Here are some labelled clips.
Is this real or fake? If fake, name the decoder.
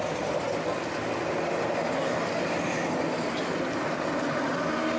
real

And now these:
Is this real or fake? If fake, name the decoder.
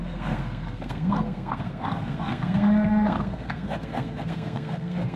fake, codec, SNAC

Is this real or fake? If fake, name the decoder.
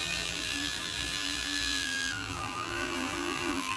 fake, vocoder, BigVGAN v2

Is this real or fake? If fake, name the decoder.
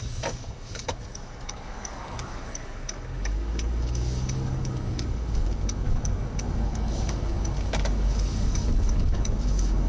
fake, codec, DAC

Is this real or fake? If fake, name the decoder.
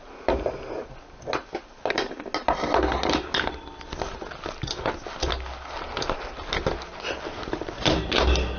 real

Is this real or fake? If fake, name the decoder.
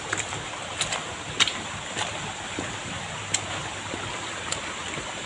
real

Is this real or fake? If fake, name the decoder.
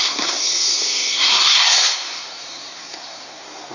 fake, codec, SNAC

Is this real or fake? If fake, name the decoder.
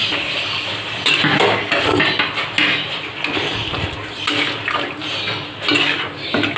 real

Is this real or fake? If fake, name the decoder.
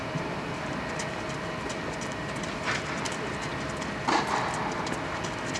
real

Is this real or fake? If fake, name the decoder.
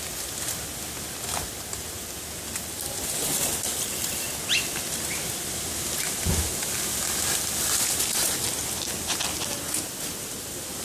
real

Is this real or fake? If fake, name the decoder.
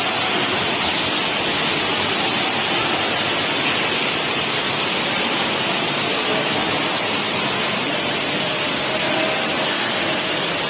real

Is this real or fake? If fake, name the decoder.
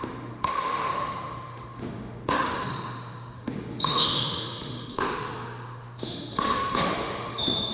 fake, autoencoder, DAC-VAE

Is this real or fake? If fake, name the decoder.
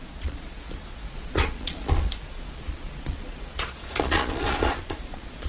fake, vocoder, Vocos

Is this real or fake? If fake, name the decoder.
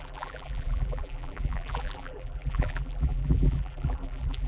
fake, vocoder, BigVGAN v2